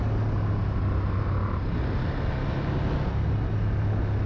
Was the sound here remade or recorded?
recorded